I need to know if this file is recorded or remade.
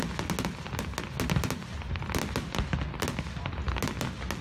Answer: recorded